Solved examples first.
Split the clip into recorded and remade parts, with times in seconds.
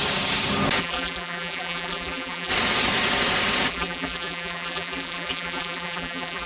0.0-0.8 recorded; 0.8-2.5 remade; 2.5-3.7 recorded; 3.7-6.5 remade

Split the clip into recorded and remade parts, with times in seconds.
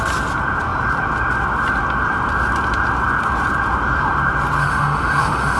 0.0-4.6 recorded; 4.6-5.6 remade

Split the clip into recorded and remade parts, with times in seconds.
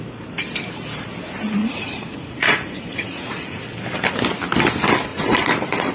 0.0-1.6 recorded; 1.6-3.6 remade; 3.6-5.1 recorded; 5.1-5.9 remade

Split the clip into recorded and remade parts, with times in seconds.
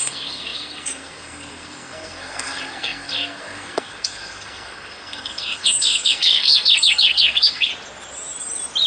0.0-7.7 remade; 7.7-8.9 recorded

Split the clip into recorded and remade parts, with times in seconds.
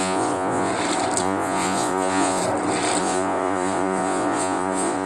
0.0-0.7 remade; 0.7-1.2 recorded; 1.2-2.4 remade; 2.4-3.0 recorded; 3.0-5.1 remade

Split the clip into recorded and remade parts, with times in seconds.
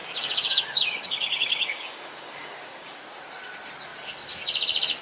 0.0-3.0 remade; 3.0-5.0 recorded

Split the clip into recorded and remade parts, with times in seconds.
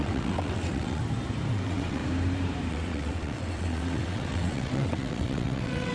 0.0-1.0 remade; 1.0-1.5 recorded; 1.5-2.0 remade; 2.0-2.7 recorded; 2.7-5.9 remade